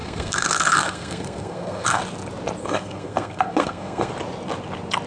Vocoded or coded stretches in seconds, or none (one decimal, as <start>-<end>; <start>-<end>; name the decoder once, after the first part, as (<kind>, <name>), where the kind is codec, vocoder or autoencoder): 0.0-2.0 (codec, SNAC); 2.6-4.1